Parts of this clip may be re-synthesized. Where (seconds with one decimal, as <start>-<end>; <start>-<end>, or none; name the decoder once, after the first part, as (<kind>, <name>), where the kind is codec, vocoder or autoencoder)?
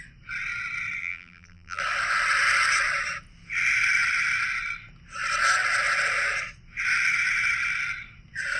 1.0-1.8 (vocoder, BigVGAN v2)